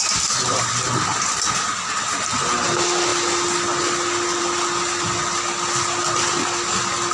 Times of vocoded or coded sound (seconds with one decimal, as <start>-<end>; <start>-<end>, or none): none